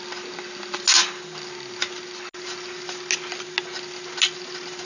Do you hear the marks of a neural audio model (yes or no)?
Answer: no